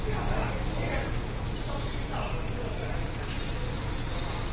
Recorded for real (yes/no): yes